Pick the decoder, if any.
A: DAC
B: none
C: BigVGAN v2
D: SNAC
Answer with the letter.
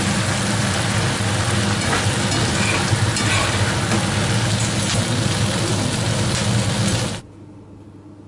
B